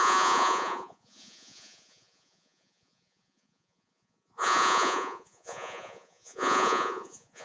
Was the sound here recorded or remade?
remade